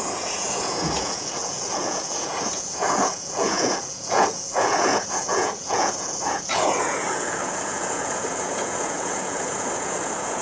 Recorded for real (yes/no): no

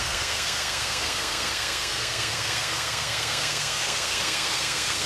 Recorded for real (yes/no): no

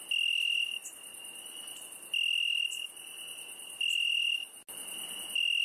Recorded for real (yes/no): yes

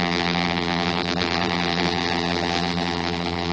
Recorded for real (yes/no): no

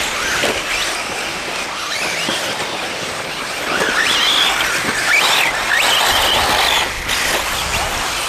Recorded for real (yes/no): yes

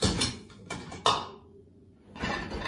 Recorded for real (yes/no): no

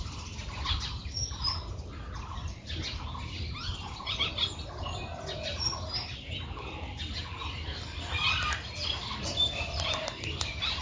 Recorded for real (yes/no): yes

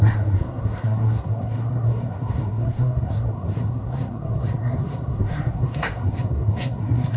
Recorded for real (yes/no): no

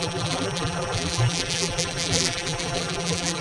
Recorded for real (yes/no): no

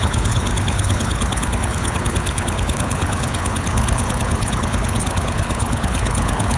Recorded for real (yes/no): no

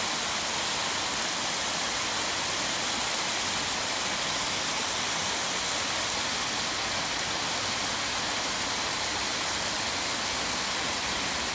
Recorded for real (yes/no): yes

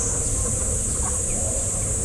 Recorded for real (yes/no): no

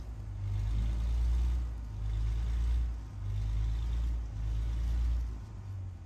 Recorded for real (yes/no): yes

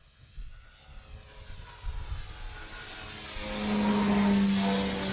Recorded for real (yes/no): yes